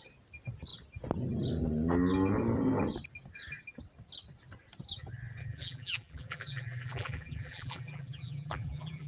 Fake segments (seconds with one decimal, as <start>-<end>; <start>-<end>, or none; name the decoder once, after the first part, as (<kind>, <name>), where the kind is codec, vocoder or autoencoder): 5.4-9.1 (vocoder, BigVGAN v2)